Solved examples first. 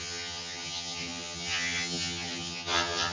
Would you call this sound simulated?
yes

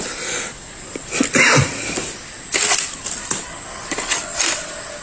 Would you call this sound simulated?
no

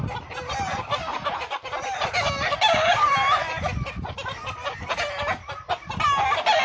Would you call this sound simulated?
no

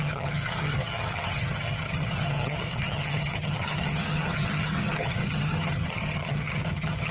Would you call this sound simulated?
yes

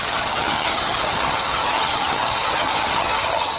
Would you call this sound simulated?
yes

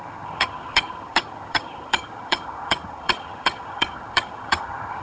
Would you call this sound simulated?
yes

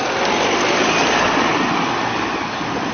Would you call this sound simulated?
no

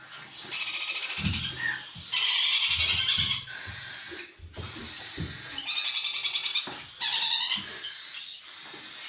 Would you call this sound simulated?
no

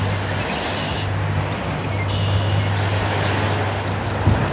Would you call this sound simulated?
no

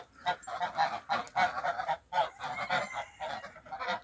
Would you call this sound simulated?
no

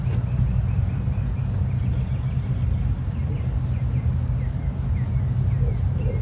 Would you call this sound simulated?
no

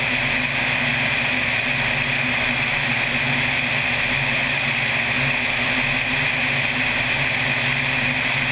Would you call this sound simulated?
no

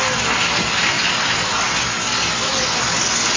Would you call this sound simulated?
no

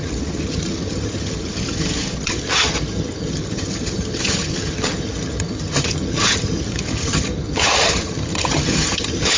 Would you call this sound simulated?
yes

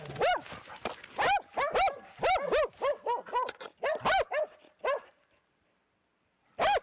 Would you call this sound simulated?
no